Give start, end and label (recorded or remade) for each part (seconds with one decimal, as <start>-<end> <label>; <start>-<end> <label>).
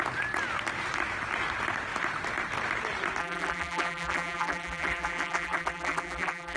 0.0-3.2 recorded; 3.2-6.6 remade